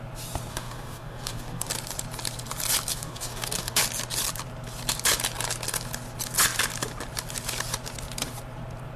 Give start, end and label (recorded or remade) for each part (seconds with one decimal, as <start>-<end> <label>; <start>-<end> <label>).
0.0-0.5 recorded; 0.5-1.7 remade; 1.7-2.9 recorded; 2.9-3.8 remade; 3.8-9.0 recorded